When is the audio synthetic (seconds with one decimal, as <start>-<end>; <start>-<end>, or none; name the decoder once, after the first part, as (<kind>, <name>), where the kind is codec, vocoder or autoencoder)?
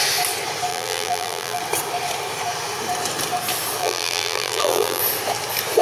0.7-1.6 (vocoder, BigVGAN v2); 3.8-5.0